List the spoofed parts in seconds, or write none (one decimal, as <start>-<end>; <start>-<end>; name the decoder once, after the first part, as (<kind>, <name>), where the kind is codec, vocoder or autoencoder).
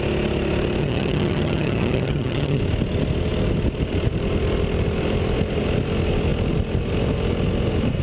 0.8-2.6 (vocoder, HiFi-GAN)